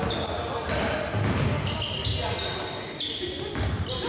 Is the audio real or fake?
real